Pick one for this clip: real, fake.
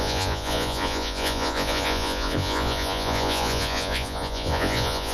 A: fake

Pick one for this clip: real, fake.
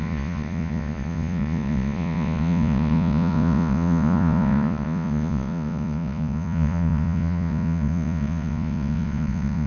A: fake